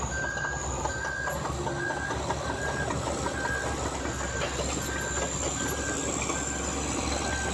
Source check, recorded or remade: recorded